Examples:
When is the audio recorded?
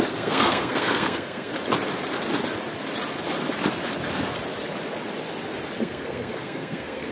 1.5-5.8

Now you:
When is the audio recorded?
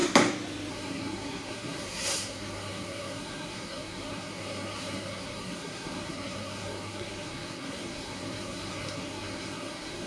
0.0-0.7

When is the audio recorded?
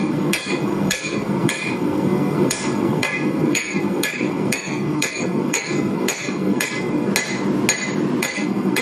7.1-8.2